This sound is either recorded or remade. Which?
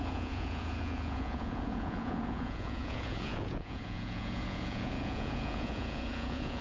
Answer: remade